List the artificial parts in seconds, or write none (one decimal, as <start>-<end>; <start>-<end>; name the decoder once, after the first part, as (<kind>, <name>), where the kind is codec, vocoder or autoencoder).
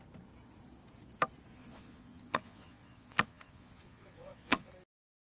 1.5-4.7 (vocoder, Vocos)